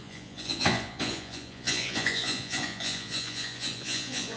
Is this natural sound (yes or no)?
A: no